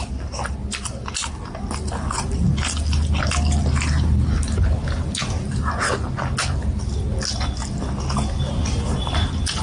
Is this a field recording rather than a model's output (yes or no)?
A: yes